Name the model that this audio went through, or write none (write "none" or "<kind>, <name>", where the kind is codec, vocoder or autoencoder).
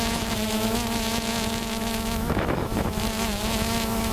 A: autoencoder, DAC-VAE